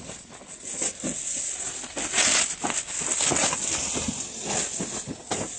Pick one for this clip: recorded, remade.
recorded